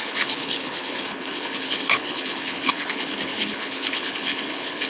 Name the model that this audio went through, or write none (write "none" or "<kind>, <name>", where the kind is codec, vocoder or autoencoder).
codec, HILCodec